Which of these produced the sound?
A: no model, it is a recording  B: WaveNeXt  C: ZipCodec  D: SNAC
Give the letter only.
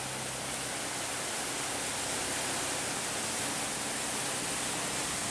A